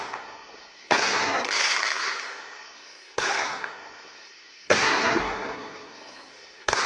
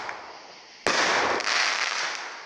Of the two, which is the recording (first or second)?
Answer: second